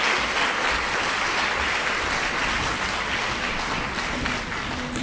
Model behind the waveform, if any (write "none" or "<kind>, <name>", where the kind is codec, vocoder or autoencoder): none